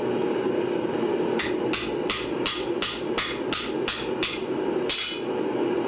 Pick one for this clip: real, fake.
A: real